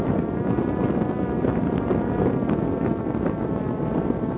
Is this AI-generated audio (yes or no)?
no